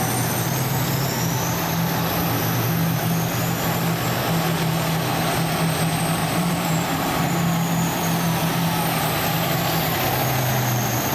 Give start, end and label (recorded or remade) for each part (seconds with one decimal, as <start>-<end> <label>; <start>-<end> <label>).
0.0-6.2 recorded; 6.2-7.2 remade; 7.2-11.1 recorded